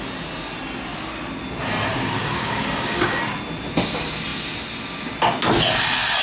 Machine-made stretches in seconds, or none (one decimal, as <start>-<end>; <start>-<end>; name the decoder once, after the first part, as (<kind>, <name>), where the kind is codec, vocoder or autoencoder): 1.9-3.2 (codec, DAC)